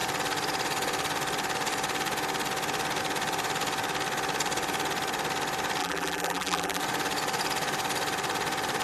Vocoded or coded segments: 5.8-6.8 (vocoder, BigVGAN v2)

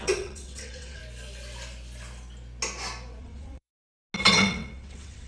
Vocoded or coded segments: 0.0-1.0 (vocoder, WaveNeXt); 3.2-3.7; 4.3-5.3